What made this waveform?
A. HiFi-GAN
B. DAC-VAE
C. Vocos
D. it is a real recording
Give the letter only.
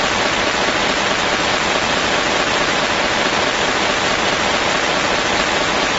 D